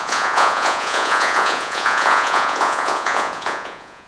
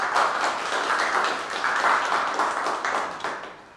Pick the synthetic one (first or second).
first